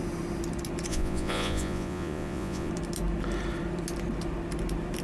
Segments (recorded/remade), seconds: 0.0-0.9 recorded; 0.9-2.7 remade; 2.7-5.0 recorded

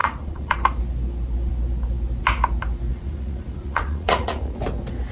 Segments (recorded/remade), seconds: 0.0-0.6 remade; 0.6-2.9 recorded; 2.9-4.6 remade; 4.6-5.1 recorded

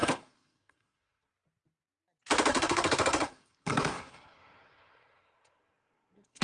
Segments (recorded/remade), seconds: 0.0-1.3 remade; 1.3-2.5 recorded; 2.5-6.4 remade

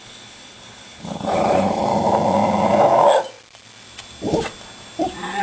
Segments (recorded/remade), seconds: 0.0-1.9 remade; 1.9-5.4 recorded

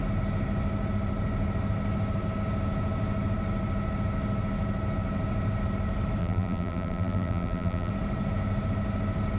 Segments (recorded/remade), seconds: 0.0-6.2 recorded; 6.2-7.9 remade; 7.9-9.4 recorded

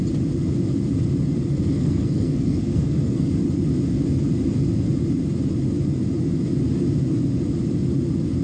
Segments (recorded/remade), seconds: 0.0-1.5 recorded; 1.5-3.3 remade; 3.3-8.4 recorded